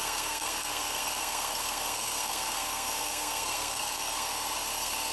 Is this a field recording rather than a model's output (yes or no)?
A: no